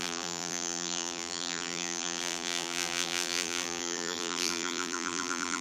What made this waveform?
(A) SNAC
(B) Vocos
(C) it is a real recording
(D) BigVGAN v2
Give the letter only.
D